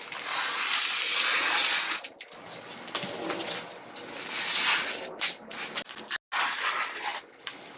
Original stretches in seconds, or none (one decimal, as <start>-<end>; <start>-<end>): 0.0-7.8

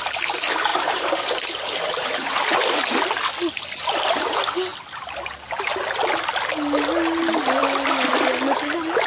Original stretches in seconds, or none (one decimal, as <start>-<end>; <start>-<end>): 0.0-0.7; 2.3-9.1

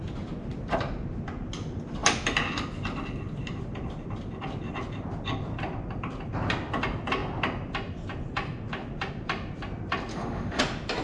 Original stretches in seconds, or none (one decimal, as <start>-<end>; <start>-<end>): 0.0-10.1; 10.6-11.0

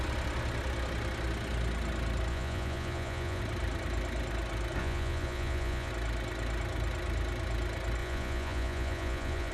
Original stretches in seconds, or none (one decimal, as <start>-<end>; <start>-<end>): 0.0-2.3; 3.4-4.8; 5.9-8.0